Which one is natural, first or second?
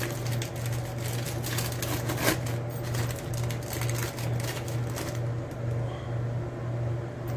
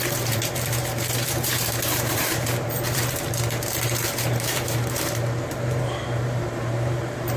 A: first